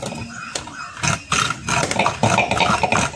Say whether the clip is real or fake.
real